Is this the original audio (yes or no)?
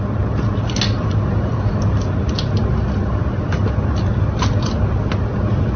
yes